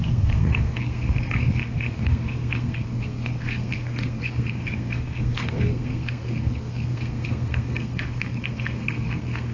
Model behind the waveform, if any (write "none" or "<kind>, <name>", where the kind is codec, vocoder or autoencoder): codec, SNAC